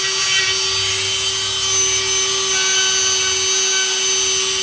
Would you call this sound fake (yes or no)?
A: no